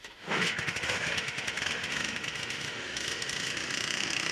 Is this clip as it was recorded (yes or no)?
no